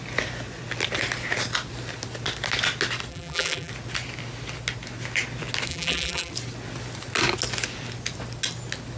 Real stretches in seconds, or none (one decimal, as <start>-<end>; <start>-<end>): 0.0-3.1; 3.7-5.7; 6.3-9.0